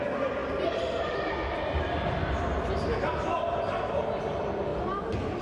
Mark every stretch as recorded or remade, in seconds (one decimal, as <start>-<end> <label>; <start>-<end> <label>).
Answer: 0.0-4.7 remade; 4.7-5.4 recorded

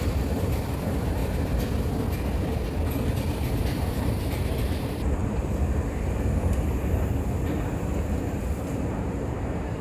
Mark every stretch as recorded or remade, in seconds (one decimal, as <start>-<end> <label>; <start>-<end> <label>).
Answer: 0.0-1.2 remade; 1.2-3.6 recorded; 3.6-5.2 remade; 5.2-8.4 recorded; 8.4-9.8 remade

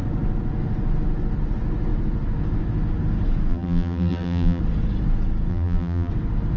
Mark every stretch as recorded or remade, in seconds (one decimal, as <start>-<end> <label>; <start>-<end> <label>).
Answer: 0.0-3.5 recorded; 3.5-4.6 remade; 4.6-5.5 recorded; 5.5-6.1 remade; 6.1-6.6 recorded

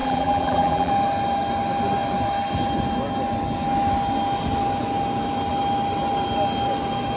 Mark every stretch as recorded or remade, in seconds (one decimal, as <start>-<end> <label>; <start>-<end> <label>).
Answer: 0.0-0.9 remade; 0.9-7.2 recorded

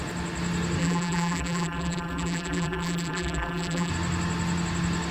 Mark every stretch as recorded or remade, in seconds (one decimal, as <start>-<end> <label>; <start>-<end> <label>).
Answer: 0.0-0.8 recorded; 0.8-3.9 remade; 3.9-5.1 recorded

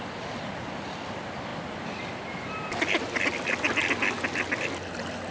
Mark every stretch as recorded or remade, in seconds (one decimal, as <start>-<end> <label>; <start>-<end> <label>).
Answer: 0.0-5.3 recorded

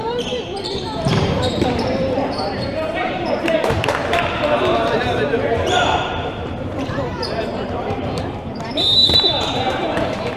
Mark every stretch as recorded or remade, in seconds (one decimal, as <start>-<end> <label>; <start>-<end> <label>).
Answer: 0.0-10.4 remade